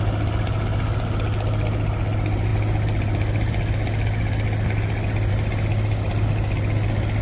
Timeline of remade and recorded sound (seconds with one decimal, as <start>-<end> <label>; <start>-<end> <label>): 0.0-7.2 recorded

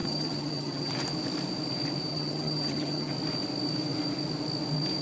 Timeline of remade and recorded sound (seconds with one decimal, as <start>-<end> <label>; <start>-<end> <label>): 0.0-0.9 remade; 0.9-2.1 recorded; 2.1-3.1 remade; 3.1-5.0 recorded

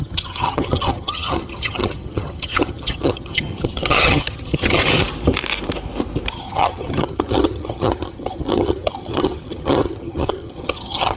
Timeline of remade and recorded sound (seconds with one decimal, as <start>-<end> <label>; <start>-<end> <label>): 0.0-4.8 remade; 4.8-6.3 recorded; 6.3-11.2 remade

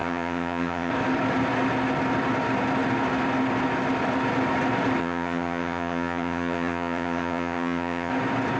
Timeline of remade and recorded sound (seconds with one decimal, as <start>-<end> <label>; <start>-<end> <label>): 0.0-0.9 remade; 0.9-5.0 recorded; 5.0-8.1 remade; 8.1-8.6 recorded

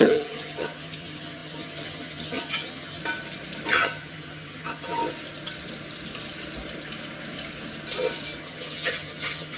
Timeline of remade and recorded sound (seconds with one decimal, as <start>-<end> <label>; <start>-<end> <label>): 0.0-3.0 remade; 3.0-3.7 recorded; 3.7-5.0 remade; 5.0-8.4 recorded; 8.4-9.6 remade

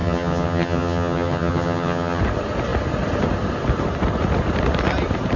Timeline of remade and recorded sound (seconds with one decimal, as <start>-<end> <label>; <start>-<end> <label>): 0.0-2.2 remade; 2.2-5.4 recorded